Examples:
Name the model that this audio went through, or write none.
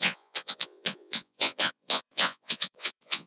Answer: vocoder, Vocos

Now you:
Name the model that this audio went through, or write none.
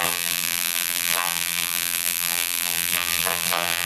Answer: vocoder, BigVGAN v2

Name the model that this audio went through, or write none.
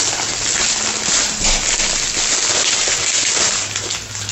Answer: none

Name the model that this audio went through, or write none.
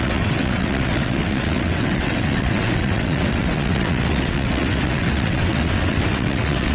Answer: vocoder, WaveNeXt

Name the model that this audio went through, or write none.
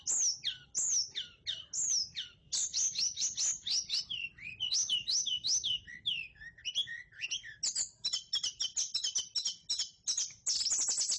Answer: none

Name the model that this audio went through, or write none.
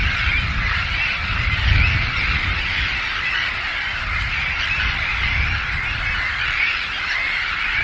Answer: none